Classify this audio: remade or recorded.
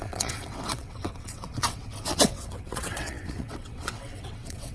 remade